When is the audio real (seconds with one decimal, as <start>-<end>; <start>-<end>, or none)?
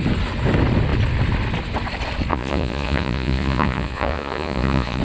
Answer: 0.0-2.3